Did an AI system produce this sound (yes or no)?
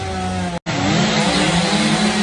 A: no